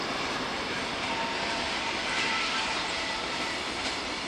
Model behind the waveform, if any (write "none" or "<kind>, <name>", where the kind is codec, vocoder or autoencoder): vocoder, BigVGAN v2